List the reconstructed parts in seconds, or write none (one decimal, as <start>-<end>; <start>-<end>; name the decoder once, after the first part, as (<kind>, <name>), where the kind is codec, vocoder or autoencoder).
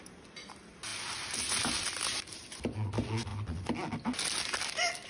none